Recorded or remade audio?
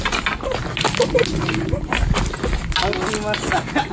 recorded